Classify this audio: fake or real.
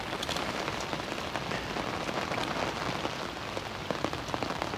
real